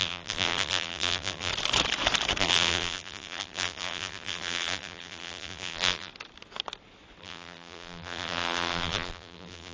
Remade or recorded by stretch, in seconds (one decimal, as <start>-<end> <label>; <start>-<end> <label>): 0.0-1.5 remade; 1.5-2.4 recorded; 2.4-6.1 remade; 6.1-7.2 recorded; 7.2-9.7 remade